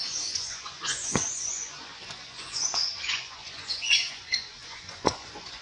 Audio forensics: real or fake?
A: fake